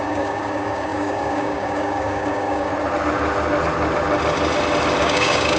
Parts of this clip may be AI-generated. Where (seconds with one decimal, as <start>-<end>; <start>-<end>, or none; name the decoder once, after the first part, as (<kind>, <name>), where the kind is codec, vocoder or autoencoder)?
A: 0.0-2.7 (codec, DAC); 5.0-5.6